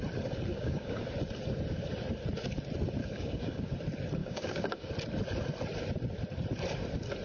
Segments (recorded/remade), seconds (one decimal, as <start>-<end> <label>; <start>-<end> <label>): 0.0-0.5 recorded; 0.5-1.1 remade; 1.1-3.0 recorded; 3.0-3.7 remade; 3.7-4.2 recorded; 4.2-4.9 remade; 4.9-7.2 recorded